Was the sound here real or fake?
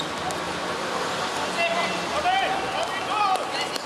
real